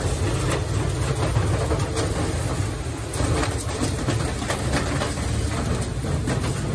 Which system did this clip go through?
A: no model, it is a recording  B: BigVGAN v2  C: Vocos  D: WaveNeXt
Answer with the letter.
A